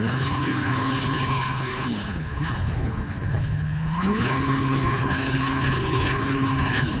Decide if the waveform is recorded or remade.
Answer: remade